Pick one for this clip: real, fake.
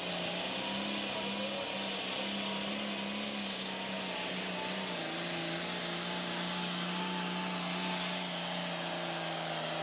real